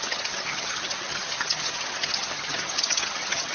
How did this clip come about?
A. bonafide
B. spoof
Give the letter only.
B